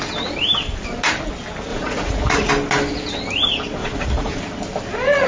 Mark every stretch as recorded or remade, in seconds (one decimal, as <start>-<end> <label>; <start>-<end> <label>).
0.0-1.7 recorded; 1.7-2.5 remade; 2.5-3.8 recorded; 3.8-4.4 remade; 4.4-5.3 recorded